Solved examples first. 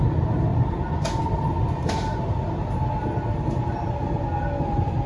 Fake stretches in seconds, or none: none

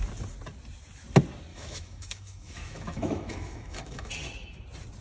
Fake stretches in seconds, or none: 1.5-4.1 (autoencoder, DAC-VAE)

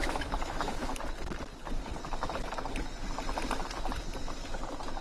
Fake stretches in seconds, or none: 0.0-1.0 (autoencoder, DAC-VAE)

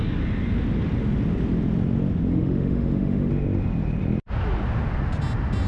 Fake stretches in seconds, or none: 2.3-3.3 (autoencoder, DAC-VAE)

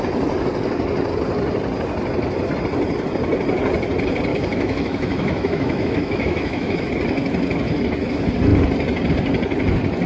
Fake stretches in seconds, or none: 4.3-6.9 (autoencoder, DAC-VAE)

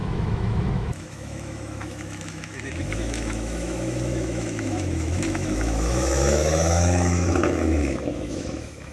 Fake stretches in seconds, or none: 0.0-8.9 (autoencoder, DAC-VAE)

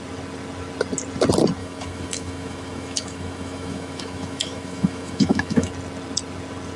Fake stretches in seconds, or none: 1.6-5.7 (autoencoder, DAC-VAE)